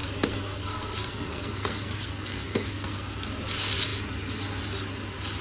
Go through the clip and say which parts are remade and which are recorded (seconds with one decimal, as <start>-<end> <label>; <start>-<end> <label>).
0.0-3.2 remade; 3.2-5.4 recorded